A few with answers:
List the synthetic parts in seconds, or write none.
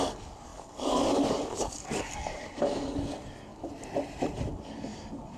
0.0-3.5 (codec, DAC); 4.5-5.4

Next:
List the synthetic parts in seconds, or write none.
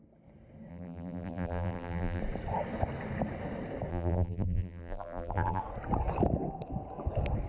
0.7-2.2 (vocoder, BigVGAN v2); 3.9-5.6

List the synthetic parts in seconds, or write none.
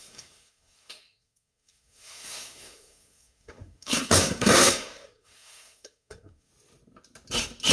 0.0-6.5 (codec, SNAC)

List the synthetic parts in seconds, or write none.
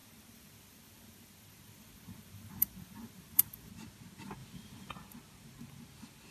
0.0-3.7 (vocoder, BigVGAN v2)